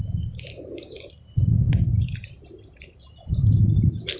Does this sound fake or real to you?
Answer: fake